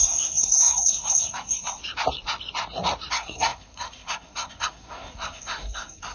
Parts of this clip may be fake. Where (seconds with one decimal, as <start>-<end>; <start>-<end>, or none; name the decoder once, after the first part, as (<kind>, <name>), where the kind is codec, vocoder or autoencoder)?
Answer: 0.0-1.8 (codec, SNAC); 3.1-6.1